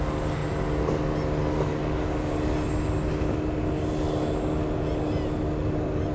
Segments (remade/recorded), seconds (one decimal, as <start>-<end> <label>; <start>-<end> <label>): 0.0-6.1 recorded